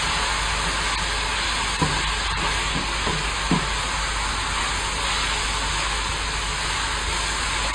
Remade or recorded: recorded